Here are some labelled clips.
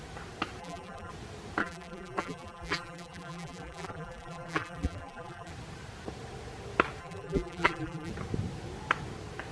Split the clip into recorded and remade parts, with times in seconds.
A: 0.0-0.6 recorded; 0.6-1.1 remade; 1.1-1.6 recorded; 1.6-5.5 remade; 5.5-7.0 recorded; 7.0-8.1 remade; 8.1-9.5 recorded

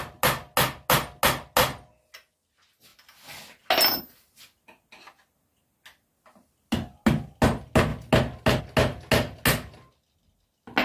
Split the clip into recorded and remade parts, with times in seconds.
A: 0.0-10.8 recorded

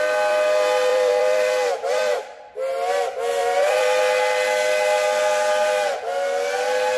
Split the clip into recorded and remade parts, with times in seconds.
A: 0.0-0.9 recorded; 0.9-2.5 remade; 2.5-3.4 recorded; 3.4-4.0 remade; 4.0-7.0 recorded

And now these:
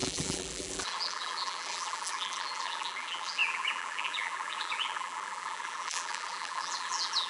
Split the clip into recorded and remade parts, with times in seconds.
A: 0.0-7.3 remade